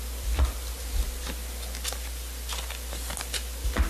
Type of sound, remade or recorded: recorded